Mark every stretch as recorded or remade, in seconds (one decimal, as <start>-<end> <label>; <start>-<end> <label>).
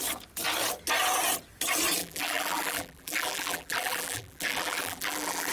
0.0-2.0 recorded; 2.0-5.5 remade